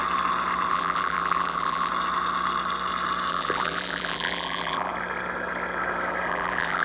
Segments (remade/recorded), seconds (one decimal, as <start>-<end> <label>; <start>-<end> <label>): 0.0-0.7 recorded; 0.7-1.9 remade; 1.9-3.3 recorded; 3.3-4.9 remade; 4.9-6.3 recorded; 6.3-6.8 remade